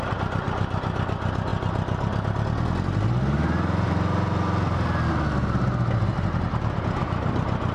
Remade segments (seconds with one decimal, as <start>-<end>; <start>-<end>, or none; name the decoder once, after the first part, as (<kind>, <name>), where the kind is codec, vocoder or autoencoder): none